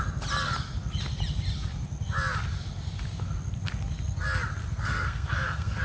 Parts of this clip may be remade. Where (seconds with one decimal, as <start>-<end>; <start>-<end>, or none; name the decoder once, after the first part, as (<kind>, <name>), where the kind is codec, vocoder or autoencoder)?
4.6-5.8 (codec, SNAC)